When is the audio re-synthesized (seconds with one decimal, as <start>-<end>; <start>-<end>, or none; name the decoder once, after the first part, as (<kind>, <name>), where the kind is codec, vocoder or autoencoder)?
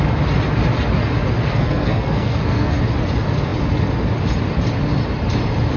1.4-2.8 (codec, SNAC)